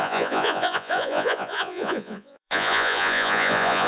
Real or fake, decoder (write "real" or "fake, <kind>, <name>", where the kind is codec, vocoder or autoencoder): fake, vocoder, Vocos